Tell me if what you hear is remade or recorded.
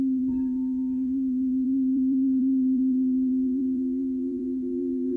remade